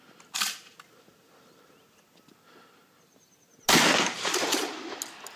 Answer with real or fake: real